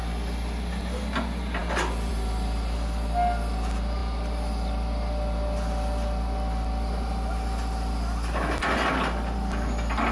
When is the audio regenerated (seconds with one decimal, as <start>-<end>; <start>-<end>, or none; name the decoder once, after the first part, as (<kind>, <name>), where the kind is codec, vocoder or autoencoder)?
none

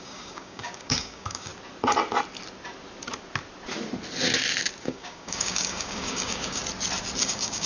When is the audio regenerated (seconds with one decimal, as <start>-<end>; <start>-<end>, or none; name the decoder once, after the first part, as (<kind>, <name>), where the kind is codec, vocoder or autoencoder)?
0.0-1.5 (codec, DAC); 4.8-6.6; 7.2-7.7

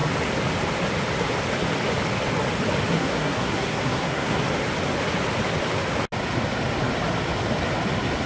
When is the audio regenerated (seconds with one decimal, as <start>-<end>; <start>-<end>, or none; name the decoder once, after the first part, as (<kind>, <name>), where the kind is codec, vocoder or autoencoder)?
2.9-4.4 (codec, SNAC)